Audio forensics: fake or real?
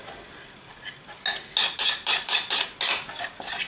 real